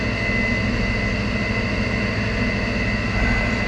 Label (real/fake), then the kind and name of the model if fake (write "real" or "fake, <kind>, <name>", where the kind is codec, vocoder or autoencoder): real